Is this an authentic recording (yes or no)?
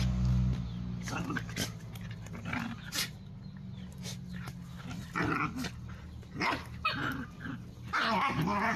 yes